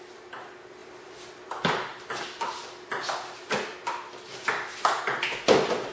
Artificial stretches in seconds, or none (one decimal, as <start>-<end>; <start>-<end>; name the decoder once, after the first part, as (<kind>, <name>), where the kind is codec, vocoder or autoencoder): none